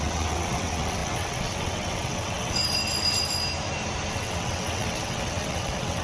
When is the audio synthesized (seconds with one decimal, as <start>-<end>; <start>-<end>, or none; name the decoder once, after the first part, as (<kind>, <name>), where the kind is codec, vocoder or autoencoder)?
0.0-2.6 (vocoder, WaveNeXt); 4.1-6.0